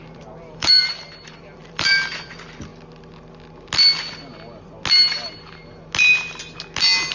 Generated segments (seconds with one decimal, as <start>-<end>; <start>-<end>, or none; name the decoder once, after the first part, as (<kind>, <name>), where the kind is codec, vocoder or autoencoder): 0.0-2.7 (vocoder, BigVGAN v2)